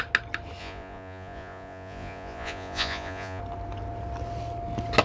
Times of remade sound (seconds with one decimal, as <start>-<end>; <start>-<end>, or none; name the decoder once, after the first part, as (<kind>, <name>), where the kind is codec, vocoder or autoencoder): 0.6-3.4 (vocoder, Vocos)